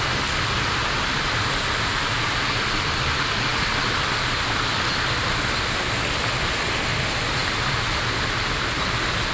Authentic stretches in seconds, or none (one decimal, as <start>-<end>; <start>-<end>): 0.0-9.3